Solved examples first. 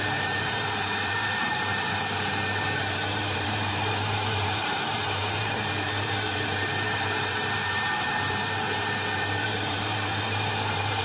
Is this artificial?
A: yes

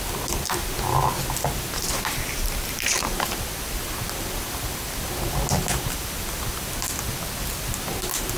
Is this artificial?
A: no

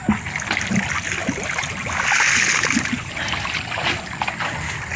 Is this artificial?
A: no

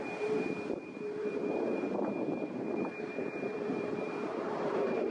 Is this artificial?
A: yes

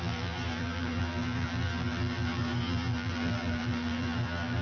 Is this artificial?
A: yes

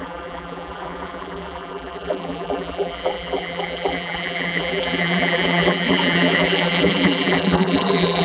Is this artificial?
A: yes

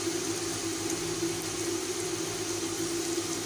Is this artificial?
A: no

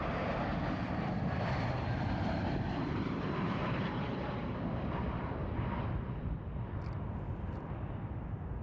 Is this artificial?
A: yes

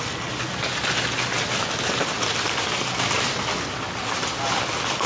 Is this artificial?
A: no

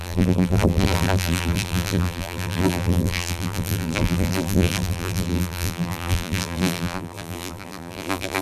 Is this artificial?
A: yes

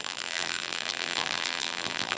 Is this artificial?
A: yes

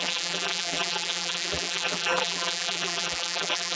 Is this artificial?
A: yes